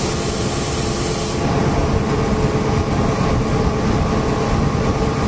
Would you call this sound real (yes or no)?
yes